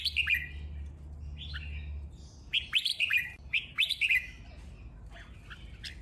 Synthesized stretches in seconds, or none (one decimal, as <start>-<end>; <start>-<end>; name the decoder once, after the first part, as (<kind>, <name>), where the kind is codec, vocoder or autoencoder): 2.9-4.1 (vocoder, BigVGAN v2)

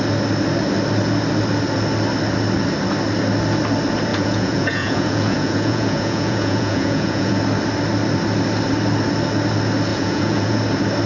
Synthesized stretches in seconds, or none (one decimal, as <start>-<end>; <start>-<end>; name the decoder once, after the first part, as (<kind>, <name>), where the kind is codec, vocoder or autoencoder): 4.1-7.4 (vocoder, Vocos); 9.9-10.6

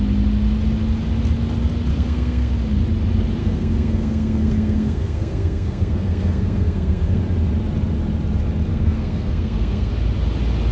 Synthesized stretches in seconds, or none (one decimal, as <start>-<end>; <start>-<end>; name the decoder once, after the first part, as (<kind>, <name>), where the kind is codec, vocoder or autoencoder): 1.9-2.5 (codec, SNAC); 3.4-7.2; 8.7-9.9

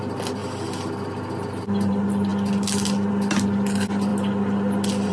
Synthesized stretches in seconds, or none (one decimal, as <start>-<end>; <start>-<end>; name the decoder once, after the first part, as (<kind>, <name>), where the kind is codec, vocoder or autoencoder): none

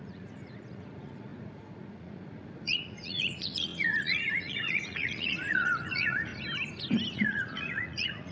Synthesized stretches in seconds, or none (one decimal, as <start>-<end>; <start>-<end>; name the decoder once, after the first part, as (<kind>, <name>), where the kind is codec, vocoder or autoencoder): 0.0-6.3 (vocoder, Vocos); 7.1-8.3